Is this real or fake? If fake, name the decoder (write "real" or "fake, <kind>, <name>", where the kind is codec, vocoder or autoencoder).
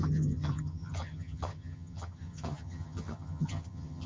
fake, vocoder, HiFi-GAN